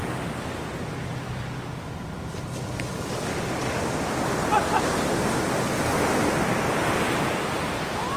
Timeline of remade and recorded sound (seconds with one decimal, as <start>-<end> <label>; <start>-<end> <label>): 0.0-8.2 recorded

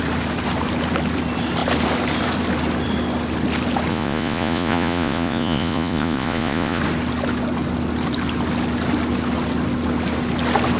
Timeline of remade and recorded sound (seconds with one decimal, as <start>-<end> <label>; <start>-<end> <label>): 0.0-3.9 recorded; 3.9-6.8 remade; 6.8-10.8 recorded

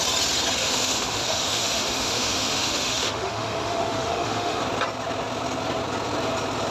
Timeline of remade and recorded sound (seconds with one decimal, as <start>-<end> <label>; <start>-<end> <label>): 0.0-0.6 recorded; 0.6-4.6 remade; 4.6-6.7 recorded

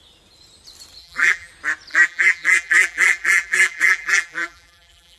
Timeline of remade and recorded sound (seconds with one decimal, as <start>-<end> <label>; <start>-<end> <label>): 0.0-1.0 recorded; 1.0-1.5 remade; 1.5-1.9 recorded; 1.9-5.2 remade